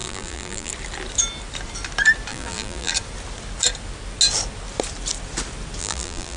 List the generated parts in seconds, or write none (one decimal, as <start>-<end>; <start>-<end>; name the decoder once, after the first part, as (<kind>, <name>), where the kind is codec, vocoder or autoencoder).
0.0-0.7 (vocoder, BigVGAN v2); 2.3-2.9; 5.8-6.4